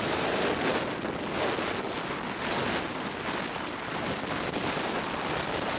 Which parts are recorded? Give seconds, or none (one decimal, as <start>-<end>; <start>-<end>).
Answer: 0.0-5.8